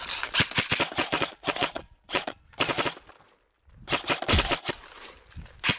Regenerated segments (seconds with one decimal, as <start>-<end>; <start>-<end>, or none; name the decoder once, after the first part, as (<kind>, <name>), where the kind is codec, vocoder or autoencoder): 1.0-2.4 (vocoder, Vocos)